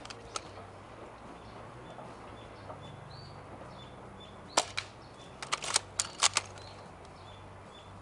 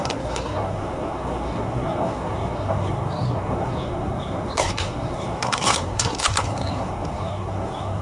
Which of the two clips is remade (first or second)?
second